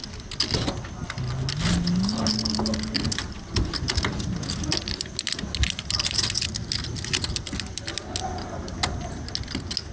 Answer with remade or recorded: recorded